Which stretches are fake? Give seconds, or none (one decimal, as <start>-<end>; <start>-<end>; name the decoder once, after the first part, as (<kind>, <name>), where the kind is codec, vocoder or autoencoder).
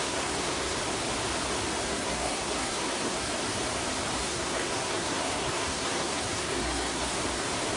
0.0-0.8 (codec, SNAC); 1.9-3.3; 4.2-7.2